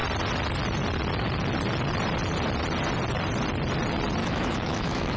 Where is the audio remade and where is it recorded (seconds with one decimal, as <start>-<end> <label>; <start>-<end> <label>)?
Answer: 0.0-4.2 recorded; 4.2-5.2 remade

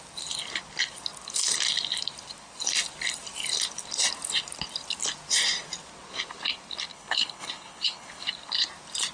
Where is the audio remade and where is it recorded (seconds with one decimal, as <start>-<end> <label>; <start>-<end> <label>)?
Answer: 0.0-6.9 recorded; 6.9-8.3 remade; 8.3-9.1 recorded

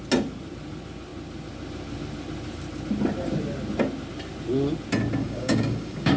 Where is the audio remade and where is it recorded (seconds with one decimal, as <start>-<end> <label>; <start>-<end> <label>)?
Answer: 0.0-5.2 recorded; 5.2-6.2 remade

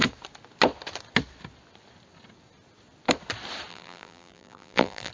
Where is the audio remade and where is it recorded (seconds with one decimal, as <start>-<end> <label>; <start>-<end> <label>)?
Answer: 0.0-3.7 recorded; 3.7-5.1 remade

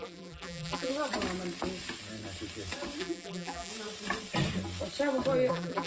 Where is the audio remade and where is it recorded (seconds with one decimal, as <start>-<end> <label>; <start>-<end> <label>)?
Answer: 0.0-0.9 remade; 0.9-3.0 recorded; 3.0-3.7 remade; 3.7-5.5 recorded; 5.5-5.9 remade

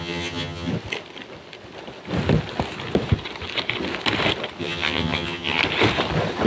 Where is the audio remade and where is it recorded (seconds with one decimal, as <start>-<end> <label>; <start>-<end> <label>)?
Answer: 0.0-0.7 remade; 0.7-4.6 recorded; 4.6-5.6 remade; 5.6-6.5 recorded

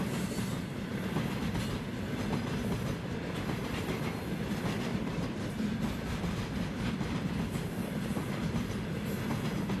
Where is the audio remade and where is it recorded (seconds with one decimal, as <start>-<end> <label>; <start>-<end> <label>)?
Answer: 0.0-0.9 recorded; 0.9-1.5 remade; 1.5-4.9 recorded; 4.9-8.7 remade; 8.7-9.8 recorded

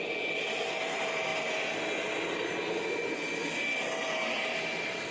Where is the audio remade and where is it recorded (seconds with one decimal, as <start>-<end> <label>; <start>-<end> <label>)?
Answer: 0.0-5.1 recorded